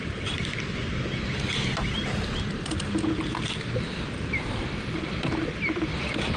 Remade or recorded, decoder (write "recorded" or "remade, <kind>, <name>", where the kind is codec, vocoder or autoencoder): remade, vocoder, BigVGAN v2